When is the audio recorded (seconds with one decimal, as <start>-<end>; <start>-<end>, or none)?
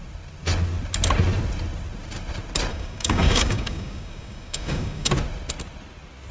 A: 0.0-2.7; 5.1-6.3